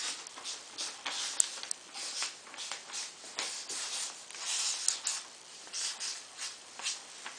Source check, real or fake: real